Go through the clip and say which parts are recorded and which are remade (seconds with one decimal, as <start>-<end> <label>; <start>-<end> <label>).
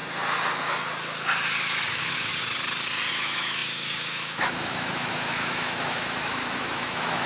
0.0-1.9 recorded; 1.9-2.3 remade; 2.3-3.1 recorded; 3.1-7.3 remade